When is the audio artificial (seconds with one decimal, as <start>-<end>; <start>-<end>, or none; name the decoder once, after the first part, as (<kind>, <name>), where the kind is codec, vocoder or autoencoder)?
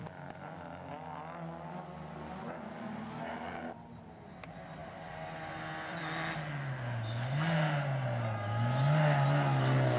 none